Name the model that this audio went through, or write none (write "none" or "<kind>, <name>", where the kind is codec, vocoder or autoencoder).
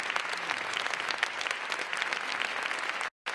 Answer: none